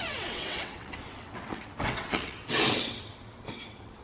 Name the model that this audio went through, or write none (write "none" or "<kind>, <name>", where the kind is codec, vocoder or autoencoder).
vocoder, WaveNeXt